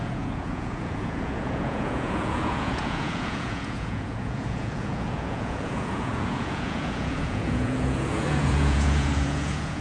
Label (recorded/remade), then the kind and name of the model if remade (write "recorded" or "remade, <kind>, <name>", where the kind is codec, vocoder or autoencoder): remade, vocoder, Vocos